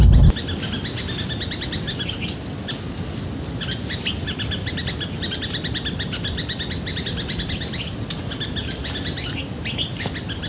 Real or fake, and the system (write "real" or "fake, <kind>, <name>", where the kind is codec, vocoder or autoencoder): real